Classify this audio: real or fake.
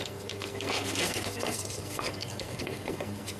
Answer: fake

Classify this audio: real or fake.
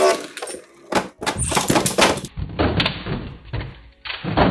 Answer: real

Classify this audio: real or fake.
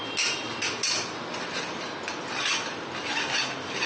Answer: real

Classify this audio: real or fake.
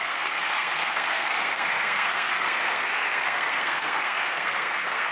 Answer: fake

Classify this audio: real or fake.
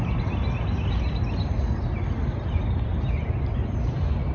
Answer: real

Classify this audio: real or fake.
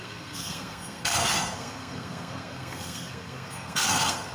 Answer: fake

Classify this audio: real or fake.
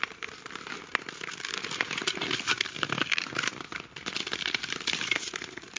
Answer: real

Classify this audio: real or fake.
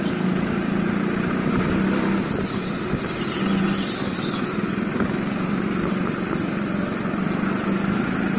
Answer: real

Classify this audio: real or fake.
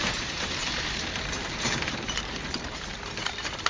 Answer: fake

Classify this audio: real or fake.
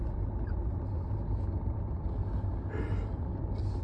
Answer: real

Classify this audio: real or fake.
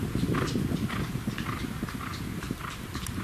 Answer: real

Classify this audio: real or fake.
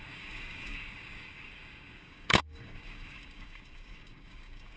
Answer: fake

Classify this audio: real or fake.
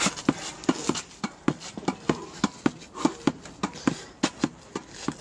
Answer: real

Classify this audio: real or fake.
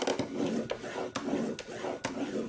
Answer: real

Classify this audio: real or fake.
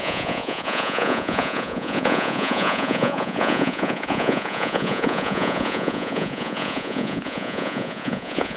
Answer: fake